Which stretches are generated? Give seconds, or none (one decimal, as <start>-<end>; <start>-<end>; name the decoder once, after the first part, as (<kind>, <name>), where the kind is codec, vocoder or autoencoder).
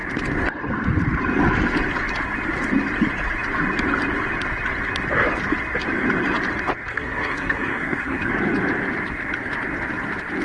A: 6.9-8.3 (codec, SNAC)